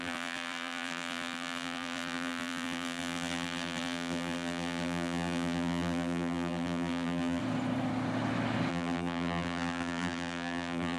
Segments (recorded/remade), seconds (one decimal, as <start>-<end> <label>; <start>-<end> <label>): 0.0-7.4 remade; 7.4-8.7 recorded; 8.7-11.0 remade